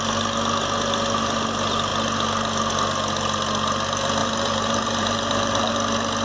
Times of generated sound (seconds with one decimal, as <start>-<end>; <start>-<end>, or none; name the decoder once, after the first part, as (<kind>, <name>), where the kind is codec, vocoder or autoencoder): 4.2-5.7 (vocoder, BigVGAN v2)

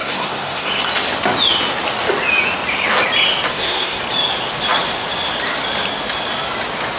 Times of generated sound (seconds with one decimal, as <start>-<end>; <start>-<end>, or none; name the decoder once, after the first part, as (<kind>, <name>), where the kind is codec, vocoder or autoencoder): 0.0-0.7 (codec, SNAC); 3.5-4.0

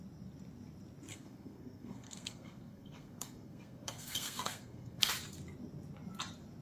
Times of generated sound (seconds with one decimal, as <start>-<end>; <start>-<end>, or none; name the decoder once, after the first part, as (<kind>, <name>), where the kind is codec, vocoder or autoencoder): 1.1-5.1 (codec, SNAC)